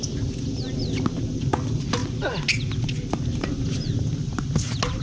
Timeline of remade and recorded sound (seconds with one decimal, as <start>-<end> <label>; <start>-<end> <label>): 0.0-5.0 recorded

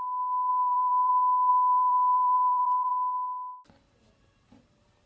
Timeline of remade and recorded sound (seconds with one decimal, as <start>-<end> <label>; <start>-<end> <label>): 0.0-0.5 recorded; 0.5-1.1 remade; 1.1-1.5 recorded; 1.5-2.9 remade; 2.9-5.1 recorded

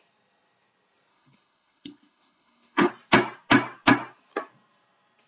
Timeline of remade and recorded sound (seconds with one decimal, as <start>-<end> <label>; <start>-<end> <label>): 0.0-1.1 recorded; 1.1-2.9 remade; 2.9-5.3 recorded

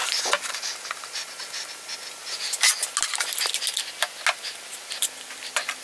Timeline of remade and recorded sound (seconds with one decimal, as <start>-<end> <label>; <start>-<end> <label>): 0.0-5.8 recorded

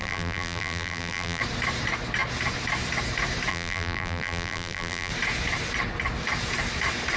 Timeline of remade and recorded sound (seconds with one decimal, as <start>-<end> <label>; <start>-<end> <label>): 0.0-1.4 remade; 1.4-3.5 recorded; 3.5-5.1 remade; 5.1-7.2 recorded